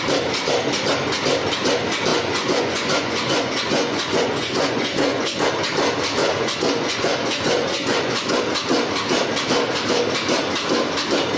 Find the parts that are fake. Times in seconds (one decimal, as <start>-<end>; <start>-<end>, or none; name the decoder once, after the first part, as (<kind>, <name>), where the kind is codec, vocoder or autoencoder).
2.1-5.5 (vocoder, Vocos); 6.2-8.4